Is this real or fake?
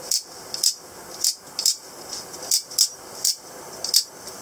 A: real